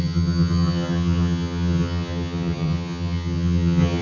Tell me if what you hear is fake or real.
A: fake